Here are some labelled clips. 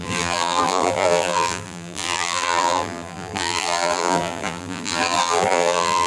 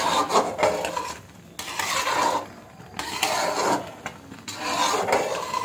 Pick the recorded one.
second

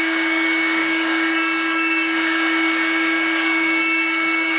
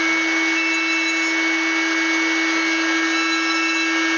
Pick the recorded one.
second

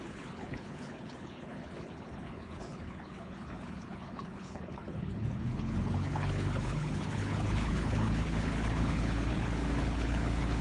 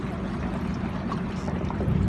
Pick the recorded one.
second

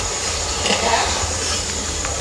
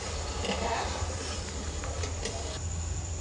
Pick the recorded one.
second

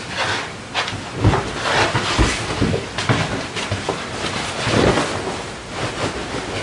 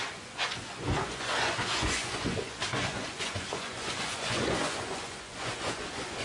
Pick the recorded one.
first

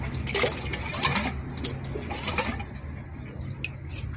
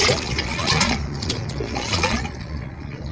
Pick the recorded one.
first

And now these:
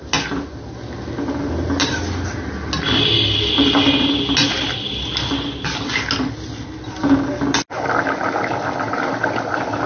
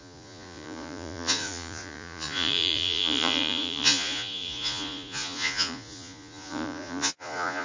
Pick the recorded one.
first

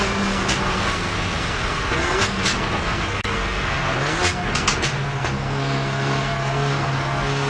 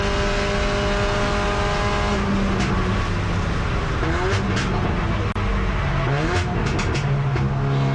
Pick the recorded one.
second